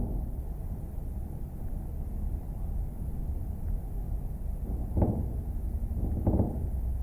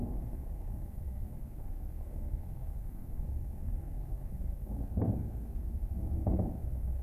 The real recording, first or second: first